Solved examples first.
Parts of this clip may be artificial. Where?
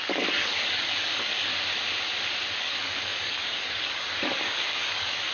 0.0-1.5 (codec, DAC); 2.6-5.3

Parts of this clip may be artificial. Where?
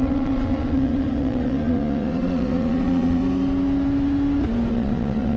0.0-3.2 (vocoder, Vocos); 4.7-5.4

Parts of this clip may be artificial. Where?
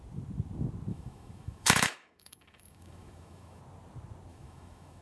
0.9-3.6 (autoencoder, DAC-VAE); 4.3-5.0